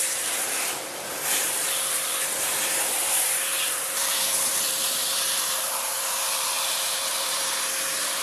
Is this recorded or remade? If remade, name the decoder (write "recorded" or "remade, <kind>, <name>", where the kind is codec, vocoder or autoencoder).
remade, vocoder, BigVGAN v2